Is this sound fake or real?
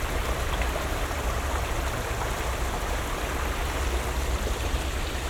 real